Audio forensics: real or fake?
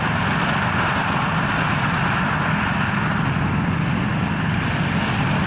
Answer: real